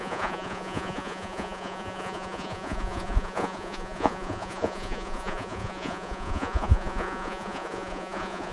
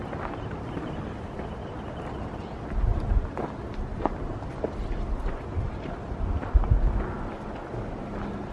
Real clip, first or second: second